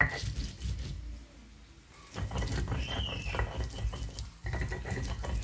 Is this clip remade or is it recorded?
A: recorded